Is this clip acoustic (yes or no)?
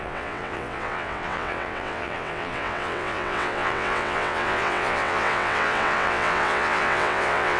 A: no